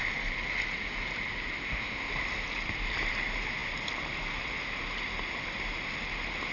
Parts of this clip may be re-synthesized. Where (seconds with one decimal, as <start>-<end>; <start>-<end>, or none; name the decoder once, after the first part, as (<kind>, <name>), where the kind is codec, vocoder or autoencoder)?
1.6-2.1 (codec, ZipCodec)